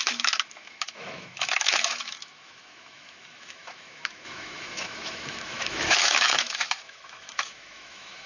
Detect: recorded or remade remade